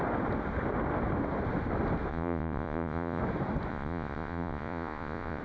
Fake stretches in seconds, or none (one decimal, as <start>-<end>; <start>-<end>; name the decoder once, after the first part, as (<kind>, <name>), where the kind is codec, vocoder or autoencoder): 2.1-3.2 (vocoder, Vocos); 3.7-5.4